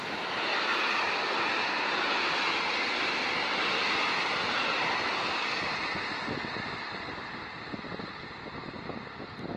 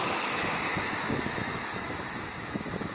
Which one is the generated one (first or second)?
second